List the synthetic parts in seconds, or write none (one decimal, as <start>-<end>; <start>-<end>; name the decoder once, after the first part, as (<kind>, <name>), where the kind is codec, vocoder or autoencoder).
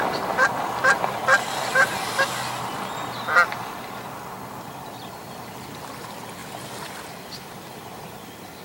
none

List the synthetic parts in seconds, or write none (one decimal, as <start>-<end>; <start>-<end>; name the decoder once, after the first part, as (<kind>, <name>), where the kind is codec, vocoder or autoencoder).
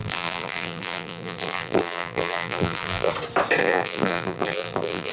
0.0-3.1 (vocoder, BigVGAN v2); 3.6-5.1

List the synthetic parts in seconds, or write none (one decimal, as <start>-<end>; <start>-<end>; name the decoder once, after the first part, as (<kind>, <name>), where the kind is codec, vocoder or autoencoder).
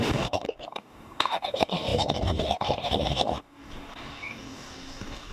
0.0-5.3 (codec, DAC)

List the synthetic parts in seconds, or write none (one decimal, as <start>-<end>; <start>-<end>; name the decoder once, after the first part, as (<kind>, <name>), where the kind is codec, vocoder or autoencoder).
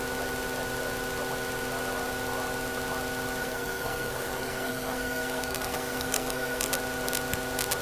3.4-6.7 (codec, SNAC)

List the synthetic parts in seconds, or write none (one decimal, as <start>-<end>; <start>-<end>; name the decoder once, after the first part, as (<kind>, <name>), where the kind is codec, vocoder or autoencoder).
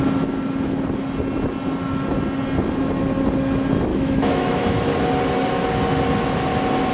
3.9-4.9 (autoencoder, DAC-VAE)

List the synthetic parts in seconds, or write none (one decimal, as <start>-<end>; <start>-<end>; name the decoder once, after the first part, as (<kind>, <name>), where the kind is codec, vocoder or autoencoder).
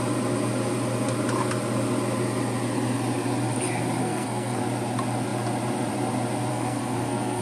4.0-4.6 (codec, SNAC); 6.5-7.4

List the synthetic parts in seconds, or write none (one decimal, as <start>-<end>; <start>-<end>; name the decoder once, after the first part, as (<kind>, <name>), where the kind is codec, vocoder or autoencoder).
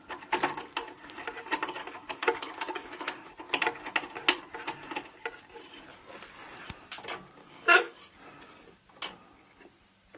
1.8-3.3 (codec, DAC); 7.4-8.0